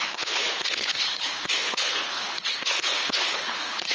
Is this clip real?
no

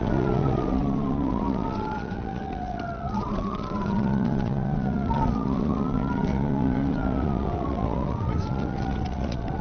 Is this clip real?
no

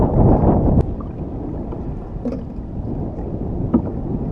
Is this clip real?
yes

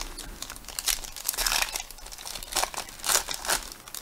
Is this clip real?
yes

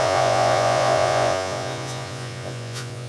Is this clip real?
no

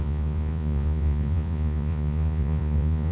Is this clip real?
no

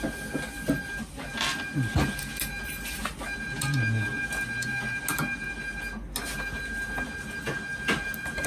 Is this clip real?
yes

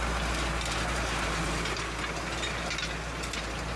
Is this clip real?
yes